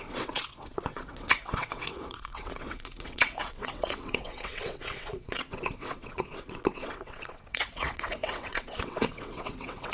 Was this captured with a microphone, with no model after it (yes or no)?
no